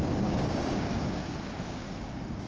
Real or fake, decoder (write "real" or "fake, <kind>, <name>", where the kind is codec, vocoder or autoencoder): fake, codec, DAC